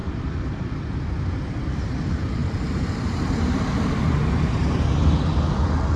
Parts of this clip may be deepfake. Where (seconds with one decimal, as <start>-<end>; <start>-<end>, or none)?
0.0-1.5; 2.4-3.9